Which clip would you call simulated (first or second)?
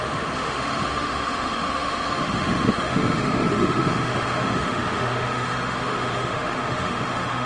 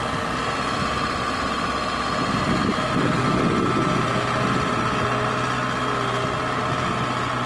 first